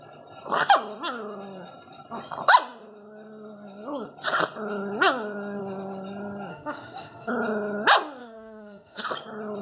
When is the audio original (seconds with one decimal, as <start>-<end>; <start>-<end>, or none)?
0.0-6.5; 7.3-8.2; 9.0-9.6